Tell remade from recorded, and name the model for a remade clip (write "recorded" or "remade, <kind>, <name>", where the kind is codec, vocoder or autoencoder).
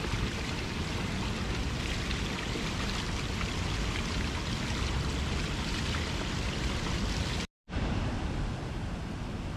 recorded